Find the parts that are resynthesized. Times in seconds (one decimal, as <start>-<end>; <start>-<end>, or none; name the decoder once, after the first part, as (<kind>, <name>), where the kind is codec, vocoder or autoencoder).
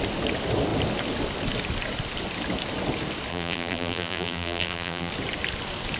3.3-5.1 (vocoder, BigVGAN v2)